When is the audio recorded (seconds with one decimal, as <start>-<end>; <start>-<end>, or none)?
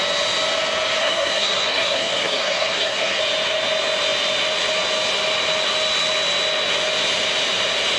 0.0-1.0; 3.2-8.0